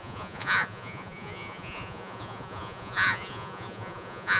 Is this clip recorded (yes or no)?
no